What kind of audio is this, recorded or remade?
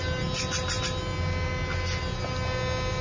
recorded